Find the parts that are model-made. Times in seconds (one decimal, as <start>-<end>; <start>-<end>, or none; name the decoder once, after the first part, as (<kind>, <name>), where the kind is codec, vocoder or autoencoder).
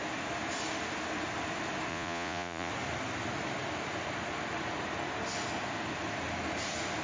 1.9-2.7 (vocoder, Vocos)